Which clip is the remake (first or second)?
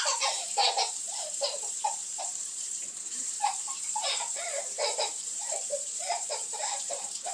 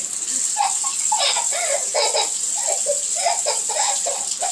first